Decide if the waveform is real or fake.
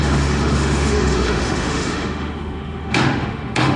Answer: fake